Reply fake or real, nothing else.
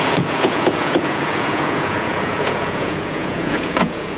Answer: fake